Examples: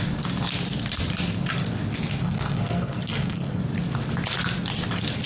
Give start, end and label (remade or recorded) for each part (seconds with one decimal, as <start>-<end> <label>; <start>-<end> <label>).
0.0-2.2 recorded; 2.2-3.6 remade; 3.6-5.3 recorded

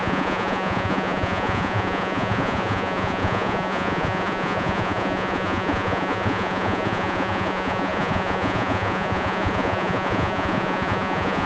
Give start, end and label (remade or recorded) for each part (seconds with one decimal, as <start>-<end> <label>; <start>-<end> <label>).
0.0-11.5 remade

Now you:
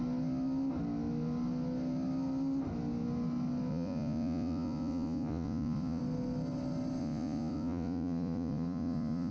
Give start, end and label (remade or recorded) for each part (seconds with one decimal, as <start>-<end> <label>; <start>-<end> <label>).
0.0-3.7 recorded; 3.7-6.0 remade; 6.0-7.0 recorded; 7.0-9.3 remade

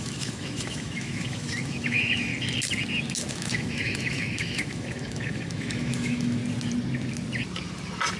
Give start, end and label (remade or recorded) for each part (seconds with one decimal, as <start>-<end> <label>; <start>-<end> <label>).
0.0-2.3 remade; 2.3-3.3 recorded; 3.3-6.4 remade; 6.4-8.2 recorded

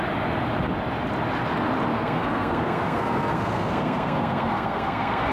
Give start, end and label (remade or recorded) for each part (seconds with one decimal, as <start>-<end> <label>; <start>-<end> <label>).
0.0-1.9 recorded; 1.9-5.3 remade